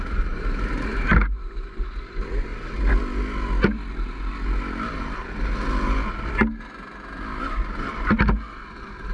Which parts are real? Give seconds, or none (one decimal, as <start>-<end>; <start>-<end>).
2.5-7.7